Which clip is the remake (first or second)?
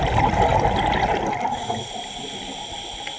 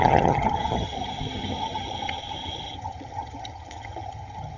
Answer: second